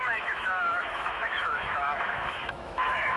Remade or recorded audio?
remade